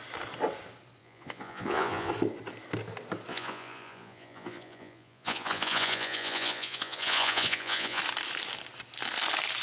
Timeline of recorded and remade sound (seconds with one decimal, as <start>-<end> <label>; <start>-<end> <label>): 0.0-1.0 recorded; 1.0-2.1 remade; 2.1-3.3 recorded; 3.3-8.0 remade; 8.0-9.6 recorded